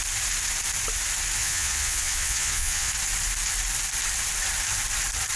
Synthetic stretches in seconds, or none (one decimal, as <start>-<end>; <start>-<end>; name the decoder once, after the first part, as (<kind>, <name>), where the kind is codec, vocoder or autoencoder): 1.4-2.9 (vocoder, Vocos)